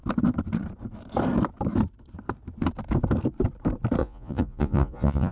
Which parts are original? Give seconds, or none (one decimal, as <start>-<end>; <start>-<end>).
0.0-4.0